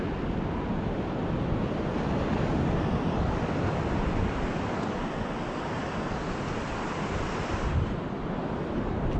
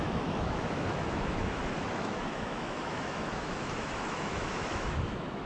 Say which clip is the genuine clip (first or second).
first